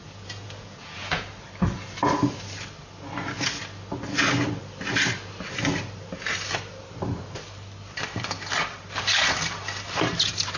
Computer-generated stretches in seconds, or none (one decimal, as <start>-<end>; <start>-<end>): 0.0-1.2

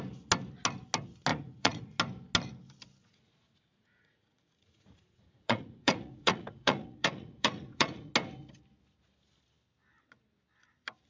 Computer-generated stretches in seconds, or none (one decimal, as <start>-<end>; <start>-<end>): 1.3-2.0; 3.0-8.1

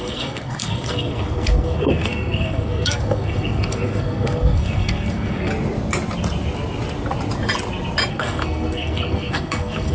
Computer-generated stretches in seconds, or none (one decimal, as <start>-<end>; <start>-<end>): 0.0-5.5; 8.1-9.9

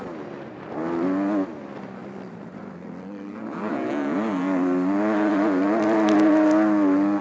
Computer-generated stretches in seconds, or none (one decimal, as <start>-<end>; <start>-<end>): none

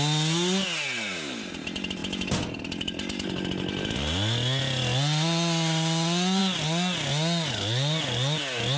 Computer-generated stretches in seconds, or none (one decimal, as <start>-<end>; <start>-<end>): none